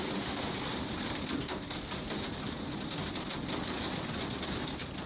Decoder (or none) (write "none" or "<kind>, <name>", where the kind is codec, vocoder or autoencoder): none